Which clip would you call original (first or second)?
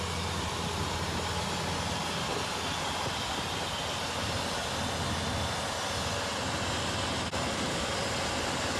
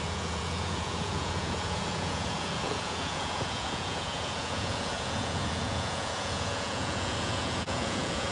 first